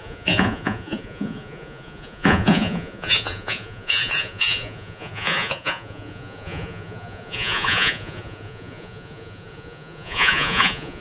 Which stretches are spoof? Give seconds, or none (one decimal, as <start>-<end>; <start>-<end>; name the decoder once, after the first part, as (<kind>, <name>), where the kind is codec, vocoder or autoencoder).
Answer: 0.0-11.0 (vocoder, Vocos)